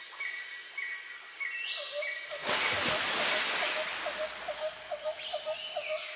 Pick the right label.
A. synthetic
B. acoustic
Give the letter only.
B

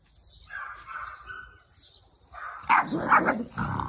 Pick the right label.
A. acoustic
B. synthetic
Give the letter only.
A